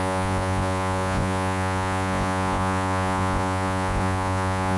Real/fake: fake